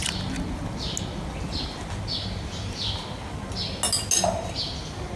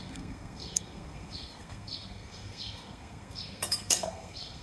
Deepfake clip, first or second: second